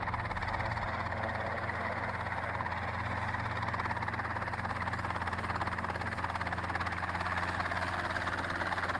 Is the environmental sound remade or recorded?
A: recorded